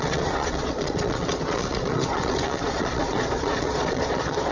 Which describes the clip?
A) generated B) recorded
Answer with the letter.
A